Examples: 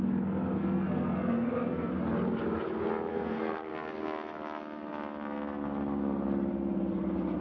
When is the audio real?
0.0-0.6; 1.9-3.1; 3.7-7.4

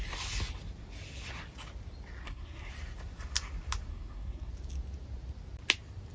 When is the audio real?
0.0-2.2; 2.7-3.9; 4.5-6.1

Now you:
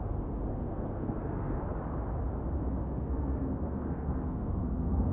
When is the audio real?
0.0-0.5; 1.6-2.8

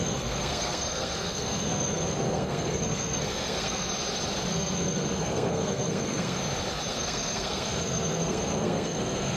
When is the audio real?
3.9-4.5; 6.4-6.9

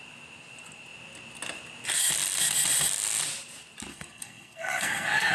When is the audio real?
0.0-3.9

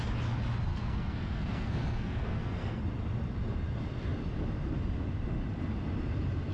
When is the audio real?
0.0-0.7; 2.8-6.5

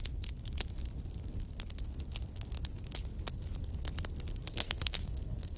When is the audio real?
0.0-4.5